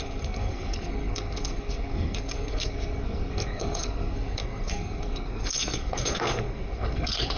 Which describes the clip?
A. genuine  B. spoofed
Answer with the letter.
B